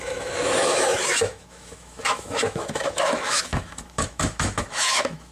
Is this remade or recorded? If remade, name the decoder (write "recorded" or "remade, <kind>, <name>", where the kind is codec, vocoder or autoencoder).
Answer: remade, autoencoder, DAC-VAE